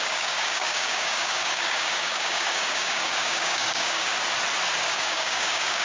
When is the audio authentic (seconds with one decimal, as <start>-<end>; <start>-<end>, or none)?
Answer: 4.1-4.8